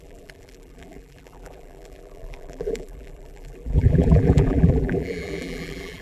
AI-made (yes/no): yes